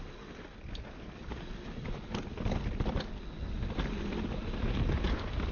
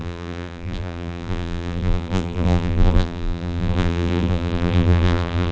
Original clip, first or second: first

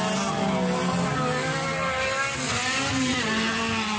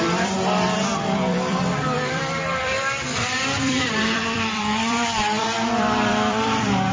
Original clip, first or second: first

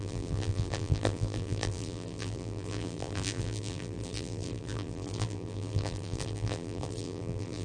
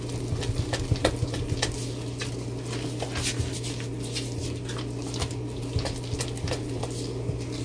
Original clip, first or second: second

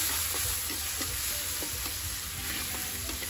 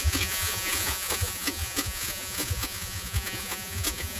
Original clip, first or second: first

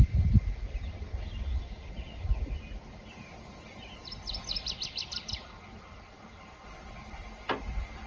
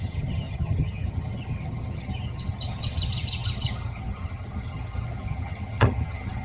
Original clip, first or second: first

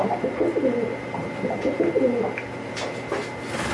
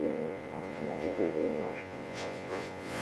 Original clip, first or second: first